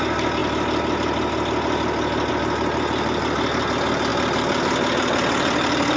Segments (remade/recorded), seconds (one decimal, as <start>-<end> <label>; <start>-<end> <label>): 0.0-6.0 recorded

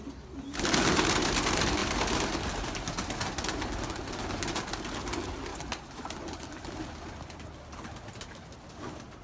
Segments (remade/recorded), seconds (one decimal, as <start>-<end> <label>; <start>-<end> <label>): 0.0-9.2 recorded

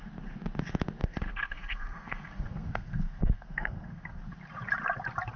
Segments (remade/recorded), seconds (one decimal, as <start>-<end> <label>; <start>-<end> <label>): 0.0-1.0 recorded; 1.0-4.2 remade; 4.2-5.4 recorded

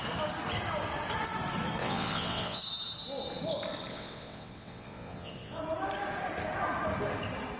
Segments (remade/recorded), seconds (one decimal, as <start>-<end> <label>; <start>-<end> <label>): 0.0-1.8 recorded; 1.8-2.6 remade; 2.6-3.9 recorded; 3.9-5.6 remade; 5.6-7.6 recorded

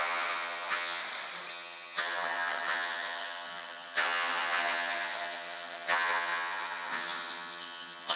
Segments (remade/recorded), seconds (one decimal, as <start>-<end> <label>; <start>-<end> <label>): 0.0-1.0 remade; 1.0-1.5 recorded; 1.5-8.2 remade

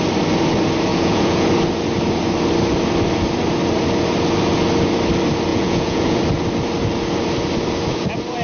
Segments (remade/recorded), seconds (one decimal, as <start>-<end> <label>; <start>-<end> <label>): 0.0-0.9 recorded; 0.9-1.5 remade; 1.5-5.5 recorded; 5.5-6.2 remade; 6.2-8.4 recorded